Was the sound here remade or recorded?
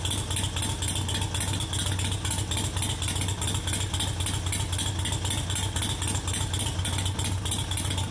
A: recorded